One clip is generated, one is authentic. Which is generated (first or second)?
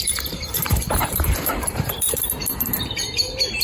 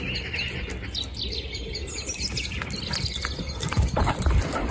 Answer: first